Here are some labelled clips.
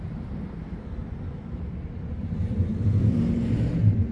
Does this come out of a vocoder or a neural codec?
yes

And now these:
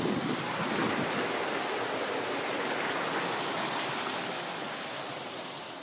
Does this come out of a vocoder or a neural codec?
no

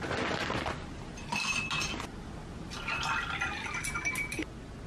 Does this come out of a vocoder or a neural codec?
no